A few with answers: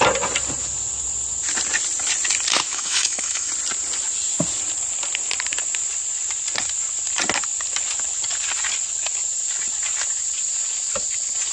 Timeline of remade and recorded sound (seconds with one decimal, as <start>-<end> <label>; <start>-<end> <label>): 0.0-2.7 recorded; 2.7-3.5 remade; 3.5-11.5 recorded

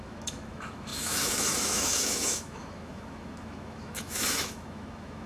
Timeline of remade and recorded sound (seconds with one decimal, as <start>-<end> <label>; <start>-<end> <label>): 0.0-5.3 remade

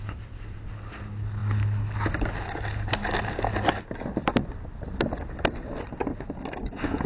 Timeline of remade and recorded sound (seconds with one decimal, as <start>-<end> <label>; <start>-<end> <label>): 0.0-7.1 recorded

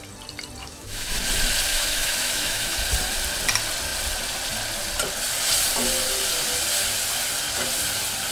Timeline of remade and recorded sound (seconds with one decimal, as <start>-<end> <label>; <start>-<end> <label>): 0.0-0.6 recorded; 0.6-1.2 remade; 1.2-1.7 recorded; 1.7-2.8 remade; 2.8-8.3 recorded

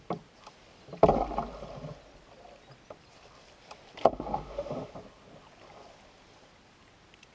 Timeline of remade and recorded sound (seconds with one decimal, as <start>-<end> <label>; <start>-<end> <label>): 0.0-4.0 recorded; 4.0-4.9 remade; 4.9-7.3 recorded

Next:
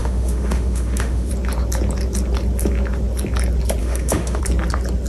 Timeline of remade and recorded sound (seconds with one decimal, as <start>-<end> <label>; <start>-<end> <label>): 0.0-1.3 remade; 1.3-3.8 recorded; 3.8-4.4 remade; 4.4-5.1 recorded

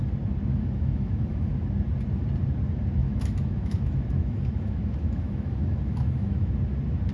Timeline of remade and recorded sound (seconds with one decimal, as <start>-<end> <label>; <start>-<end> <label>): 0.0-0.5 recorded; 0.5-1.5 remade; 1.5-3.0 recorded; 3.0-6.5 remade; 6.5-7.1 recorded